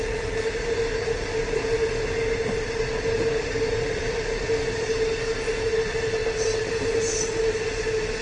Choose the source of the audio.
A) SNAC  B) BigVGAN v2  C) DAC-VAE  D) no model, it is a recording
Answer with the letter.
D